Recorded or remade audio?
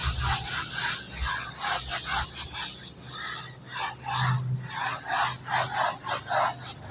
recorded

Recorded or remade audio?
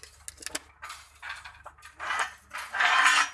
recorded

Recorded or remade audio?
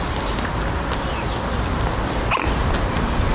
recorded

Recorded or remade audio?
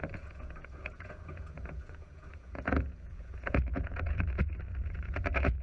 remade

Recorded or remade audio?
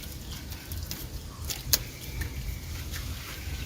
recorded